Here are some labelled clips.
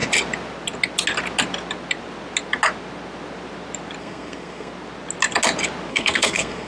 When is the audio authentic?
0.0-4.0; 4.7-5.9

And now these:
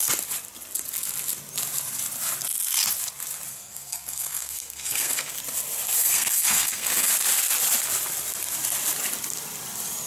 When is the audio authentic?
0.0-3.5; 5.4-6.0; 7.1-10.1

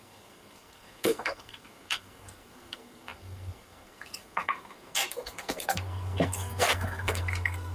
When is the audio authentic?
none

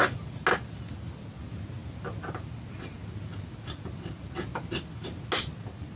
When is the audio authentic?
0.0-6.0

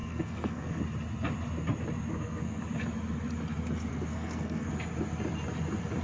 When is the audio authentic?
0.8-2.1; 2.6-3.9; 4.7-6.0

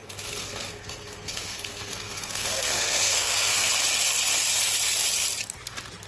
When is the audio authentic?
3.7-6.1